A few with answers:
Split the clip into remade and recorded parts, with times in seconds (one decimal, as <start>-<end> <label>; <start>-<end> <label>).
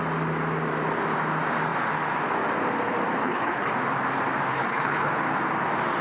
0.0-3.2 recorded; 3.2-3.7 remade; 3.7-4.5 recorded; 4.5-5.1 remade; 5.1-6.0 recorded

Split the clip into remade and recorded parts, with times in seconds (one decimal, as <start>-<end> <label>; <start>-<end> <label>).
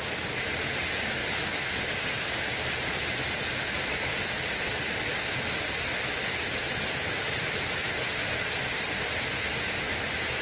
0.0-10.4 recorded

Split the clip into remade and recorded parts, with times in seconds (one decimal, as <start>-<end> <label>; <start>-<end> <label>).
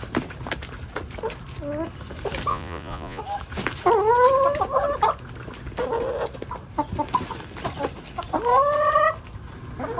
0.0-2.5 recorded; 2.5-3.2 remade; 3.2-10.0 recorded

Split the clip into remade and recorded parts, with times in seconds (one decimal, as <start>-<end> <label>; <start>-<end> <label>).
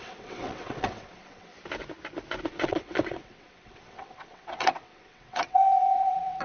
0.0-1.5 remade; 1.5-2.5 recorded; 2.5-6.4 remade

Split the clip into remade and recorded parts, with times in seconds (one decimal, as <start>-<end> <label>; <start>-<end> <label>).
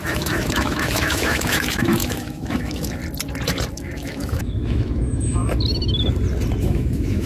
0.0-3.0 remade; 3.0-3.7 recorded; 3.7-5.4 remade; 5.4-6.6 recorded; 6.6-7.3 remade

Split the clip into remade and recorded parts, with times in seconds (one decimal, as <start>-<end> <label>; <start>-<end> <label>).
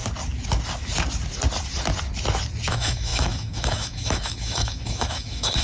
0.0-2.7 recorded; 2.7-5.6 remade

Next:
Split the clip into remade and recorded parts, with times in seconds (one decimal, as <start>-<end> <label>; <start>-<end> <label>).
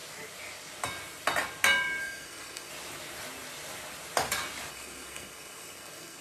0.0-2.0 recorded; 2.0-2.7 remade; 2.7-4.7 recorded; 4.7-6.2 remade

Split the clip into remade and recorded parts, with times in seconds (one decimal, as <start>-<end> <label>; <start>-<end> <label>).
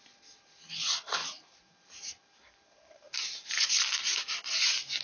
0.0-1.2 recorded; 1.2-3.5 remade; 3.5-5.0 recorded